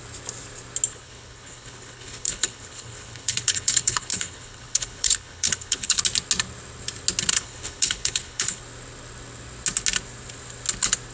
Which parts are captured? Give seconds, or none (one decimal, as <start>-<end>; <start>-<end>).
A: 0.0-0.9; 6.0-7.3; 8.6-11.1